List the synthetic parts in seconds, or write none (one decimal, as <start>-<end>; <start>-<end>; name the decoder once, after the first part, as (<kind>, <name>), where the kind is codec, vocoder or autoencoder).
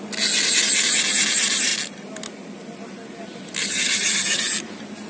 3.6-4.4 (vocoder, HiFi-GAN)